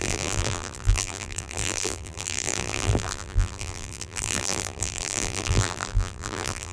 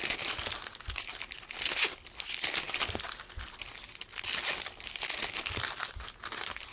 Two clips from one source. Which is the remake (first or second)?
first